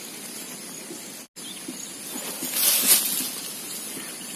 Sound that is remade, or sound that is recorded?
recorded